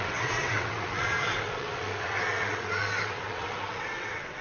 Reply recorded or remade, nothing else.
remade